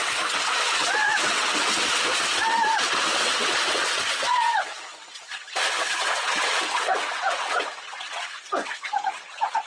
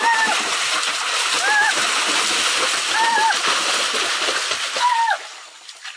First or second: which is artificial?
first